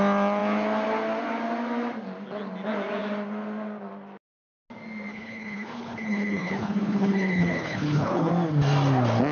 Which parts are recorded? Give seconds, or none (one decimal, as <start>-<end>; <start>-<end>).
0.0-5.1; 8.3-9.3